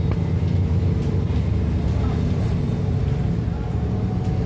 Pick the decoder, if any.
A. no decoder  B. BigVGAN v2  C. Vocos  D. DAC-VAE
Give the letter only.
A